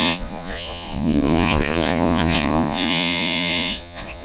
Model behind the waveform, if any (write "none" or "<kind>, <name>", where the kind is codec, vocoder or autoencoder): vocoder, Vocos